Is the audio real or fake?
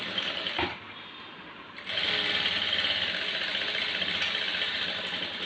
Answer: real